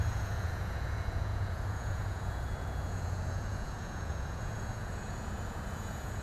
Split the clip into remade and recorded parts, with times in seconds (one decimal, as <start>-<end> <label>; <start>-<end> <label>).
0.0-6.2 remade